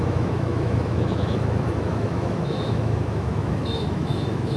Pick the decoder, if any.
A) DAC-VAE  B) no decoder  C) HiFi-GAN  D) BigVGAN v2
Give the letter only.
A